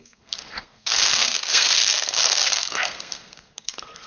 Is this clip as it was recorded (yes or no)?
no